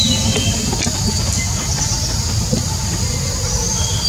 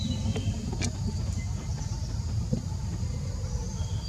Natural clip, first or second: first